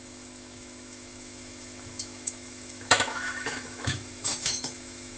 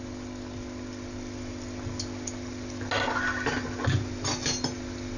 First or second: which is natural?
second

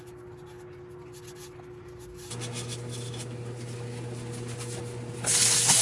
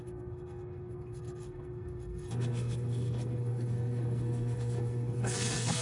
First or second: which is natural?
first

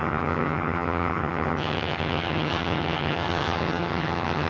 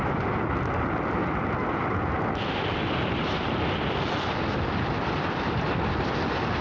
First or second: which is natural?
second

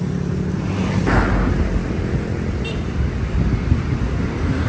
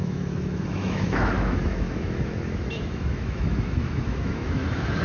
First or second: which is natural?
first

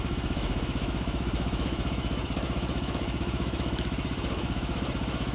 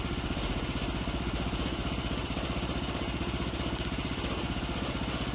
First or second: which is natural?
second